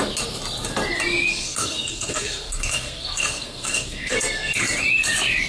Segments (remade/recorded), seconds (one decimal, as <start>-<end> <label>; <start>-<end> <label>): 0.0-1.3 recorded; 1.3-4.6 remade; 4.6-5.5 recorded